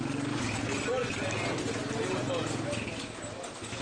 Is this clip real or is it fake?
real